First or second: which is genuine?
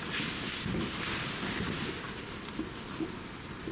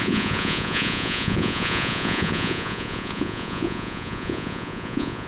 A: first